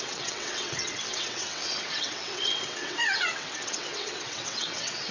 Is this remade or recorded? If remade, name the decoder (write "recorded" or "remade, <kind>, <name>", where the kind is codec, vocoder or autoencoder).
remade, vocoder, WaveNeXt